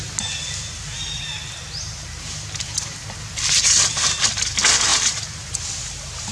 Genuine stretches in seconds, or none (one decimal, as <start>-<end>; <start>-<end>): 0.0-6.3